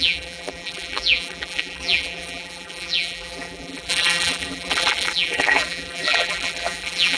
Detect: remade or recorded remade